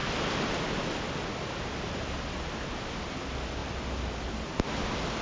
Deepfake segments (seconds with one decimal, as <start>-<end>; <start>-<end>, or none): none